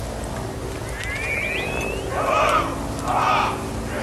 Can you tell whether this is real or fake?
real